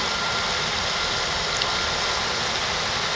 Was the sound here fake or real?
real